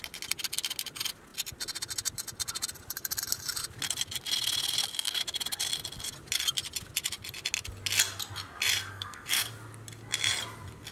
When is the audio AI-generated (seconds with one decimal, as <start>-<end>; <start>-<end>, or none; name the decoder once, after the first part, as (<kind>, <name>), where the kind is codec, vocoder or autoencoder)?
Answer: 8.9-9.5 (codec, SNAC)